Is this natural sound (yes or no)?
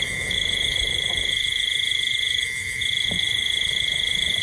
no